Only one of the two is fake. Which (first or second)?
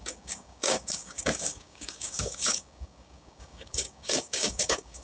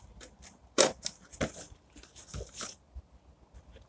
first